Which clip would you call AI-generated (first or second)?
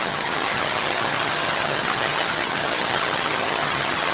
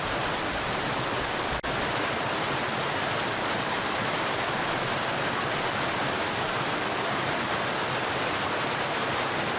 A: first